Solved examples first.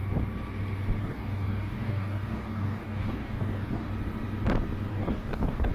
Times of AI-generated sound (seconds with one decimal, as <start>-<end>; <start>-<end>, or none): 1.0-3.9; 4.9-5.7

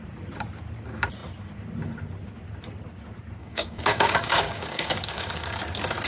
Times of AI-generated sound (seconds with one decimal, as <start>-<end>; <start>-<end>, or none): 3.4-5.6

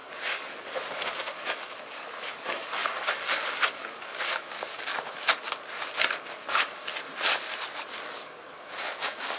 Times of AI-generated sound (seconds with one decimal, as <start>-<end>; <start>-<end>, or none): 0.0-4.9; 6.2-6.9; 8.1-9.4